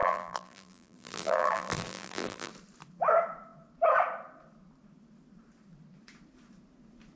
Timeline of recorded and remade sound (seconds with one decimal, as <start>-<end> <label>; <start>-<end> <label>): 0.0-2.5 remade; 2.5-7.2 recorded